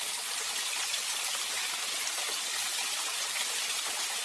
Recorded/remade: recorded